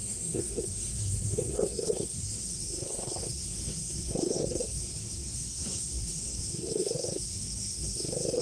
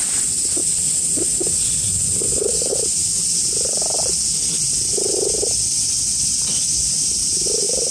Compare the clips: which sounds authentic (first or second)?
second